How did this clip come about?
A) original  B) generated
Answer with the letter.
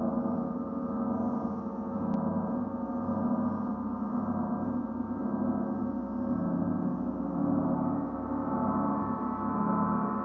A